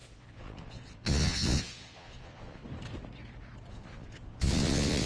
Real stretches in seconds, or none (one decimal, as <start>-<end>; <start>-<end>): 2.6-3.7